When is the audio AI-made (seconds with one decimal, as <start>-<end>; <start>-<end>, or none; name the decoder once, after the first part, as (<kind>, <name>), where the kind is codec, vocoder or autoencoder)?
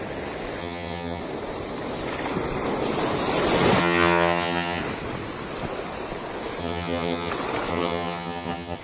0.6-1.2 (vocoder, HiFi-GAN); 3.8-4.8; 6.6-7.3; 7.7-8.8